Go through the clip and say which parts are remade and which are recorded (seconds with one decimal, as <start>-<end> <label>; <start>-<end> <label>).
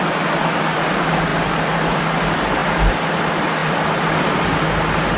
0.0-1.3 recorded; 1.3-2.0 remade; 2.0-2.6 recorded; 2.6-3.1 remade; 3.1-3.6 recorded; 3.6-4.4 remade; 4.4-5.2 recorded